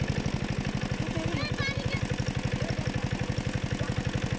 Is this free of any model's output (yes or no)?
yes